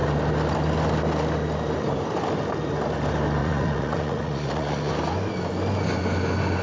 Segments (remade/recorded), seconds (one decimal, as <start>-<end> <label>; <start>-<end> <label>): 0.0-3.4 recorded; 3.4-4.9 remade; 4.9-6.6 recorded